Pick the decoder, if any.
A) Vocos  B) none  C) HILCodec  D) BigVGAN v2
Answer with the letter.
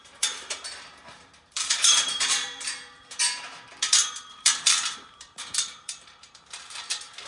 D